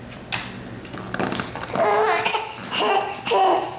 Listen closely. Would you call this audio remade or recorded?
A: recorded